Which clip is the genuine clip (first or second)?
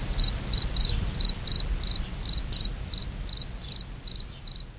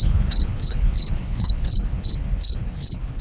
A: first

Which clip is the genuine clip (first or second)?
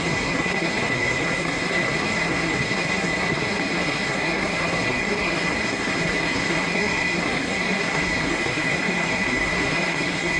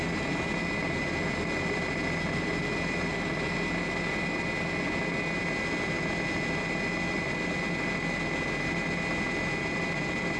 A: second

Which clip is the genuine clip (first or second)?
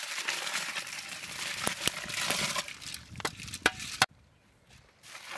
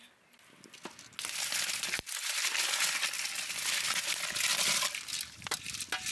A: second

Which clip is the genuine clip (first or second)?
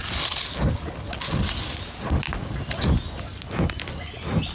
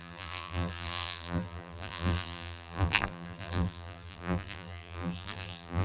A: first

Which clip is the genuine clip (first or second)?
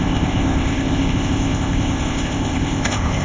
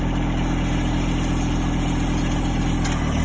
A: second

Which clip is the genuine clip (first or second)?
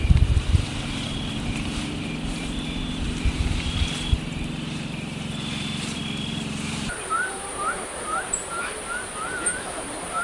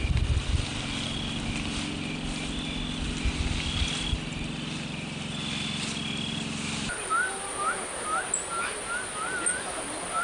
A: second